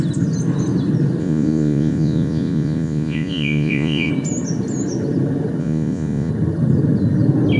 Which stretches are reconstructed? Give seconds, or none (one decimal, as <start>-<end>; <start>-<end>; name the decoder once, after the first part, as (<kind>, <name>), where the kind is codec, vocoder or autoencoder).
1.2-4.1 (vocoder, Vocos); 5.6-6.3